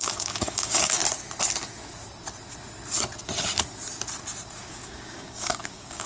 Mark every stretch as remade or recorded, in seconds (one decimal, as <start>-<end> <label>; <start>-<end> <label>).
0.0-1.0 remade; 1.0-4.7 recorded; 4.7-6.1 remade